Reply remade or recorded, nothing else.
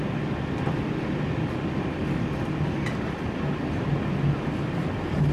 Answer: recorded